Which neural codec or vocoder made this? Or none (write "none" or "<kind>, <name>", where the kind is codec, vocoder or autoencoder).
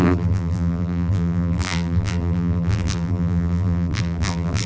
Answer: vocoder, BigVGAN v2